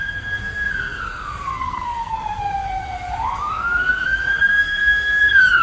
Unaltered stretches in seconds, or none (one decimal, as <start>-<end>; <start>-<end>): none